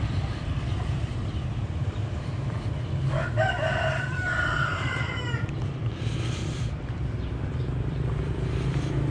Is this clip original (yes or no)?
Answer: no